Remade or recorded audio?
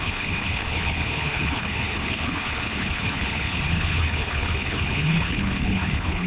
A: remade